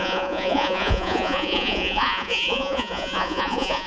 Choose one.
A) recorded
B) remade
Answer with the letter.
B